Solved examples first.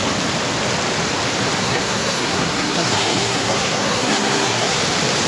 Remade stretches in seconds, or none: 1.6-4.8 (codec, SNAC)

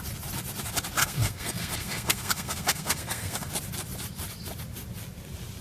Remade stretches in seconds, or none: 1.0-3.5 (codec, SNAC)

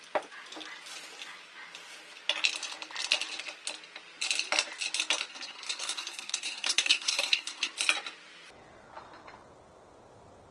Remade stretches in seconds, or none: 5.3-7.7 (codec, SNAC)

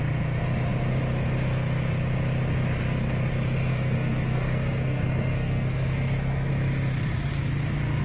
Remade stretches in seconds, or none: 3.7-6.5 (codec, SNAC)

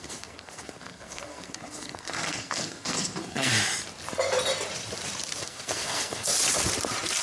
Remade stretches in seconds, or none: 0.0-3.5 (codec, SNAC); 5.4-6.3

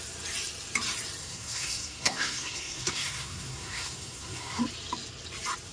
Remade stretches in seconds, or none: 1.2-4.6 (codec, SNAC)